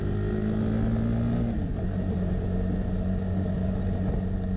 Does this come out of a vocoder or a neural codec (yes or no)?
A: no